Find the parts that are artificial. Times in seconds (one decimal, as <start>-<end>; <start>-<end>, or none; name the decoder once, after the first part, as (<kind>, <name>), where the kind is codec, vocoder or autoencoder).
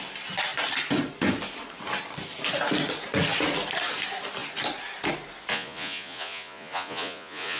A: 5.5-7.6 (vocoder, Vocos)